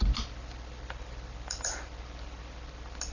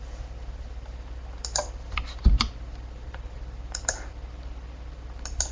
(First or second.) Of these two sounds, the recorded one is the first